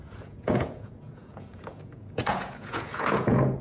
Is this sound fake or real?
fake